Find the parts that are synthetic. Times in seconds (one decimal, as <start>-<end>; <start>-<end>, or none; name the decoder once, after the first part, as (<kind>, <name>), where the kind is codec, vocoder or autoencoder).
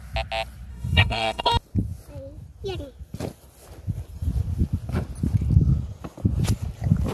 0.7-1.5 (codec, SNAC)